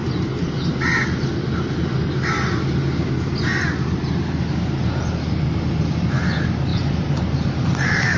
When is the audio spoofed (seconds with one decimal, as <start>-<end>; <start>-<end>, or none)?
0.0-0.7; 6.7-8.2